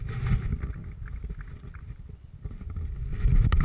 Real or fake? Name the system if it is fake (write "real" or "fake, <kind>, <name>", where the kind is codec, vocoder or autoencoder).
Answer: real